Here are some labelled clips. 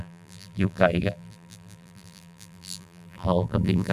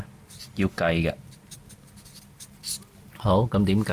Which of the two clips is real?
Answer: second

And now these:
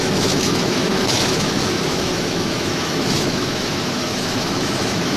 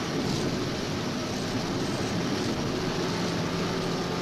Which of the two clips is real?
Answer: second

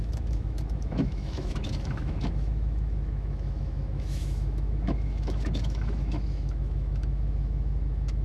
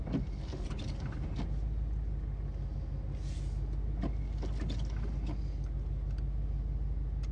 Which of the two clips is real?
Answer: second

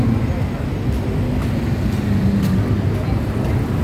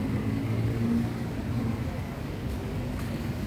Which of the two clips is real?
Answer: first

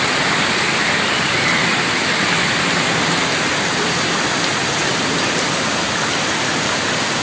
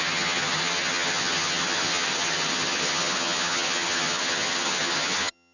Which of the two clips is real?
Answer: first